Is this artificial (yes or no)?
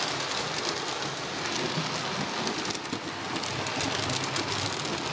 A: no